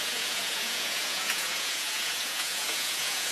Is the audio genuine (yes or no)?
no